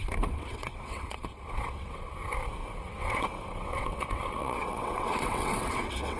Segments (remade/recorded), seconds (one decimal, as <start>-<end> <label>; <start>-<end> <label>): 0.0-2.2 remade; 2.2-2.8 recorded; 2.8-6.2 remade